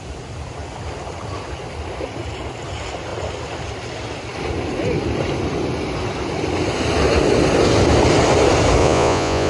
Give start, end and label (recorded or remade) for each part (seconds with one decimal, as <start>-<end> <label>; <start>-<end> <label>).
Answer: 0.0-8.8 recorded; 8.8-9.5 remade